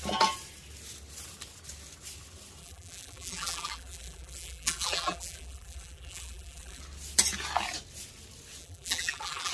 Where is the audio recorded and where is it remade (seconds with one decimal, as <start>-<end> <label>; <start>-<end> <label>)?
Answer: 0.0-2.6 recorded; 2.6-6.8 remade; 6.8-8.6 recorded; 8.6-9.5 remade